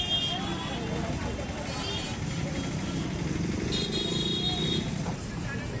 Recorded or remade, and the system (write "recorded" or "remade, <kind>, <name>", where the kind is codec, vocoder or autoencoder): recorded